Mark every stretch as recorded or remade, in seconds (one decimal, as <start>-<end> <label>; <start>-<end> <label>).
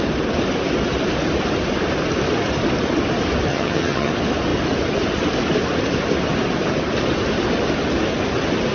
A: 0.0-3.5 recorded; 3.5-4.1 remade; 4.1-8.7 recorded